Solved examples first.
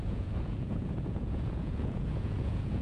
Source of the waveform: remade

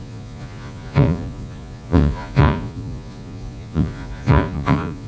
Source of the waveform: remade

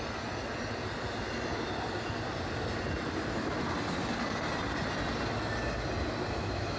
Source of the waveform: recorded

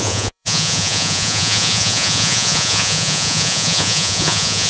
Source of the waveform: remade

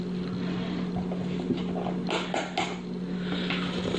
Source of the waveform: recorded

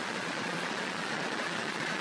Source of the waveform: remade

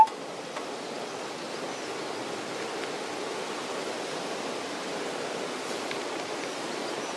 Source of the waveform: recorded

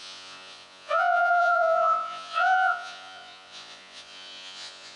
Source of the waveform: remade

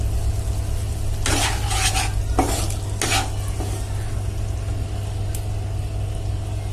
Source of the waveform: recorded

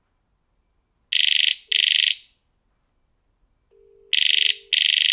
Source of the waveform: recorded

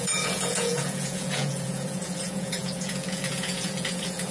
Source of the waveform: remade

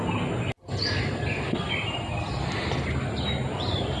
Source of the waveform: recorded